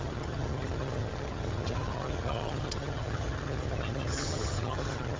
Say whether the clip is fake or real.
fake